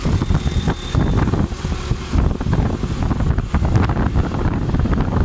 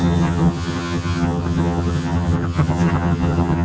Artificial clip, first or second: second